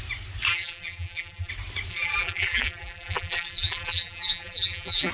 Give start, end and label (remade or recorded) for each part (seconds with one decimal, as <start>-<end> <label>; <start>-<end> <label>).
0.0-0.5 recorded; 0.5-1.5 remade; 1.5-1.9 recorded; 1.9-5.1 remade